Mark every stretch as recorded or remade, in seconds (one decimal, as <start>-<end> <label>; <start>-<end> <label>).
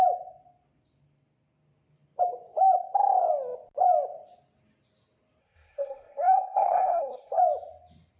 0.0-5.4 recorded; 5.4-7.4 remade; 7.4-8.2 recorded